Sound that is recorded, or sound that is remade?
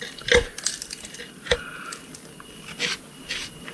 recorded